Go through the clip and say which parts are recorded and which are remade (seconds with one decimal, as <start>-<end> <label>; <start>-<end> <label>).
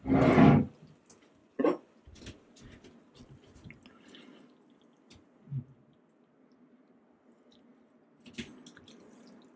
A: 0.0-1.4 recorded; 1.4-2.2 remade; 2.2-9.6 recorded